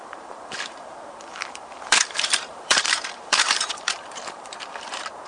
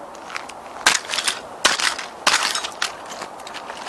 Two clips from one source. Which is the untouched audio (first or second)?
second